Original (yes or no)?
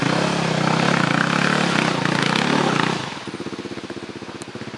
yes